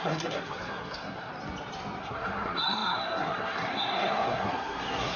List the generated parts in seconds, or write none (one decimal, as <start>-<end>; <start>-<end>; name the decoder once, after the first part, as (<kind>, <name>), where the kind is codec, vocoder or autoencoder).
0.0-1.3 (codec, SNAC); 2.0-5.2